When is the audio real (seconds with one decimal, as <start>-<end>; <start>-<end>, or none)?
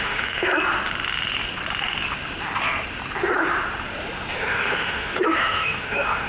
0.5-4.3